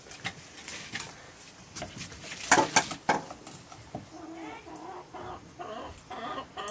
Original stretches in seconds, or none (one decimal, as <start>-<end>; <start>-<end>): 0.0-6.7